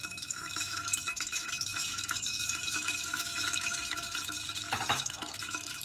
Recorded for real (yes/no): no